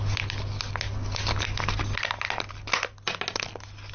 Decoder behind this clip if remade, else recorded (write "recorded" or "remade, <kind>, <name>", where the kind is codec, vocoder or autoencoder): recorded